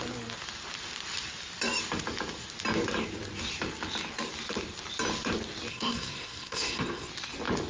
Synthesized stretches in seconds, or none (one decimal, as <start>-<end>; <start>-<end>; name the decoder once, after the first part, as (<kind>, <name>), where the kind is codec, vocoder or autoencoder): 5.7-7.1 (codec, SNAC)